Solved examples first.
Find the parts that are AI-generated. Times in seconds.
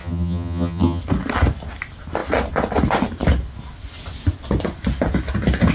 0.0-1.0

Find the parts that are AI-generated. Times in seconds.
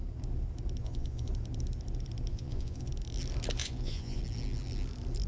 0.8-1.3; 2.3-2.9; 3.6-4.2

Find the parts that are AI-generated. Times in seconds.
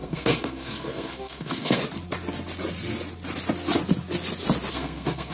0.0-1.8; 4.7-5.3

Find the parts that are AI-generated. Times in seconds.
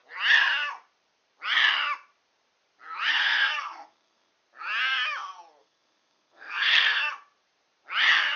3.1-4.3; 5.6-7.1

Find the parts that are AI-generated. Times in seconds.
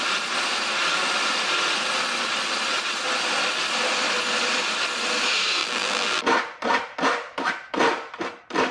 5.6-6.2